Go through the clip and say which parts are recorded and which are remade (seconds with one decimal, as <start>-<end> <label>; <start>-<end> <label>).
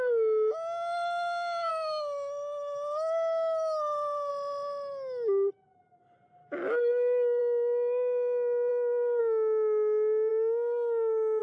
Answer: 0.0-1.7 recorded; 1.7-4.3 remade; 4.3-6.4 recorded; 6.4-7.4 remade; 7.4-8.7 recorded; 8.7-9.2 remade; 9.2-10.3 recorded; 10.3-11.4 remade